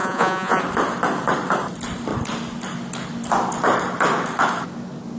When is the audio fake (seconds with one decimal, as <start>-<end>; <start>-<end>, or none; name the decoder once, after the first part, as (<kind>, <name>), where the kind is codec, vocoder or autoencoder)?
0.0-0.6 (vocoder, Vocos)